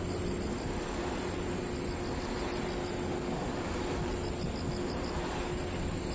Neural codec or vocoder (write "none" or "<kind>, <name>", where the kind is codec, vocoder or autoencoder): none